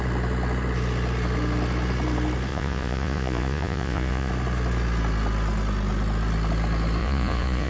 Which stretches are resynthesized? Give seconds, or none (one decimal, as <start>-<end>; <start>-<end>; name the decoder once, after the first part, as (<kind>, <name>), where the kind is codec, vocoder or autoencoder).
2.5-4.3 (vocoder, Vocos); 7.0-7.7